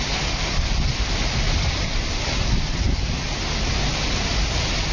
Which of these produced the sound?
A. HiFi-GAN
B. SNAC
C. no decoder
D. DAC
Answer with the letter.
C